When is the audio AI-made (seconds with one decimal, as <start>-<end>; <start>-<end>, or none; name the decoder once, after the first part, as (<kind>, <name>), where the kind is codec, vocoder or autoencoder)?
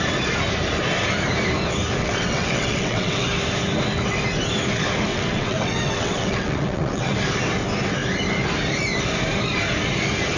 2.0-3.2 (vocoder, WaveNeXt); 5.1-7.1